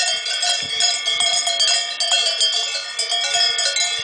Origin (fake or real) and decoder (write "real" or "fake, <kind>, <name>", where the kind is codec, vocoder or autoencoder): real